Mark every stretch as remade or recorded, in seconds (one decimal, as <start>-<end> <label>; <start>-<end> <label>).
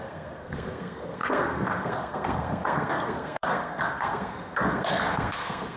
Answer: 0.0-5.8 remade